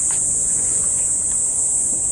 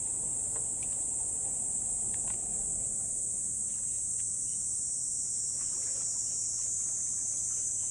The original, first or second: second